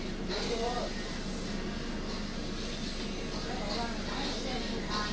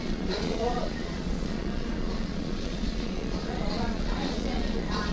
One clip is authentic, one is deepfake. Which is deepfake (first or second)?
second